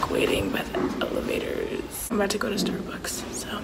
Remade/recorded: recorded